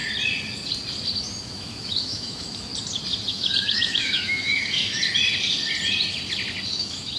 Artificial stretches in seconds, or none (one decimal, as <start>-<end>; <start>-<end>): 1.4-2.7; 3.3-5.0; 6.7-7.2